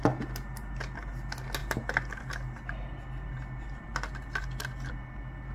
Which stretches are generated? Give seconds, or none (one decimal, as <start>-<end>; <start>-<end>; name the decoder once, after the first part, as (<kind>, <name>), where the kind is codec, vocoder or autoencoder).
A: none